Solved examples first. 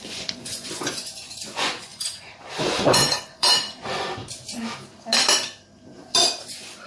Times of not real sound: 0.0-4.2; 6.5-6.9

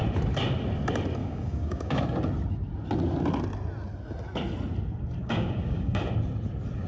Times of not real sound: 1.2-2.0; 5.2-6.0

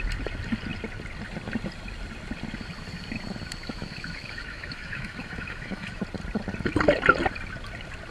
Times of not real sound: 3.6-6.0

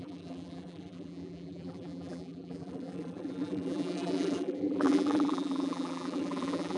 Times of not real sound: 0.0-6.8

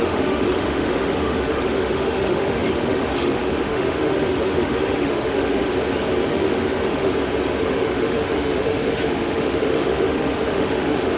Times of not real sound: 0.0-5.7; 6.3-7.1; 7.6-11.2